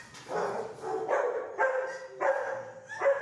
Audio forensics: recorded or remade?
recorded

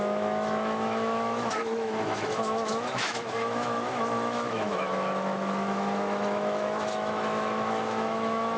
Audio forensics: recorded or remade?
remade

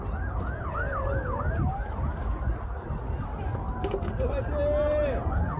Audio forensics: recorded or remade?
recorded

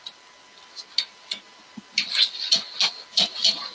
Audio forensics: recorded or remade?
recorded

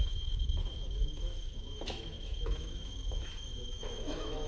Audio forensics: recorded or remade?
remade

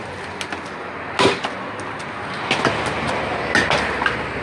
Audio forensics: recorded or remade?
recorded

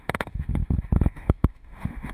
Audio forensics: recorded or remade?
remade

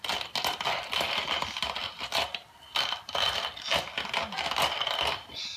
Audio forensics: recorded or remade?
recorded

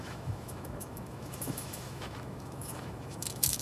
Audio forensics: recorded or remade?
remade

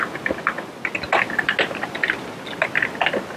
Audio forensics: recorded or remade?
recorded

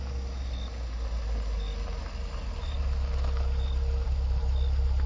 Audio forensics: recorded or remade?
recorded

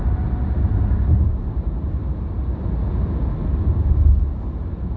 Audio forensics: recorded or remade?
recorded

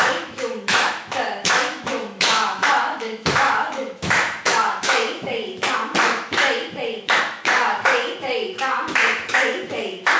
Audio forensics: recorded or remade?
remade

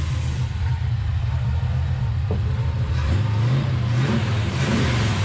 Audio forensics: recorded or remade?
recorded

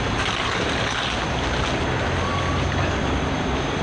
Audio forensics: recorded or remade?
recorded